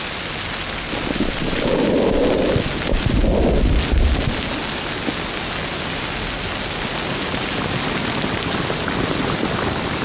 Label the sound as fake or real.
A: real